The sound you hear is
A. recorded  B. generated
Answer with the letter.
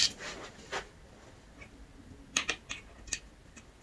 A